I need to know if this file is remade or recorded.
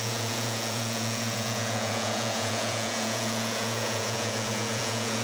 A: remade